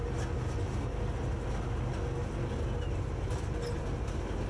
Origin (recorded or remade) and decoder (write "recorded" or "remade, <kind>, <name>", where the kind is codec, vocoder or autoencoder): recorded